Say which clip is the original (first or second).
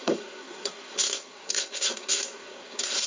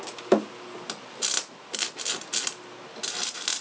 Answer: second